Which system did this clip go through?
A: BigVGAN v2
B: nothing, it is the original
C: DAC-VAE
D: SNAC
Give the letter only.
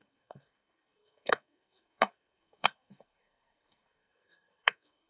D